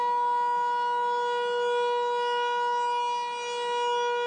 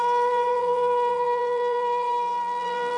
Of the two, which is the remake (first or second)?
second